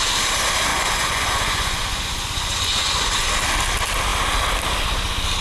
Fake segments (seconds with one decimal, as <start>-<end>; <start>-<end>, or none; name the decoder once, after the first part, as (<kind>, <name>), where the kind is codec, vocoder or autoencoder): 0.7-3.3 (vocoder, Vocos)